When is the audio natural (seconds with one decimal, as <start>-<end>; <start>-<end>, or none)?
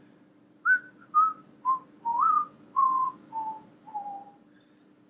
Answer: 0.0-2.1; 3.3-5.1